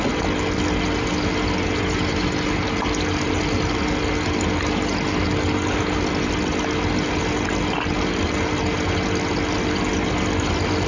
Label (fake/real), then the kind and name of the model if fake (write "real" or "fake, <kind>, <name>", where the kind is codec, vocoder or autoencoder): real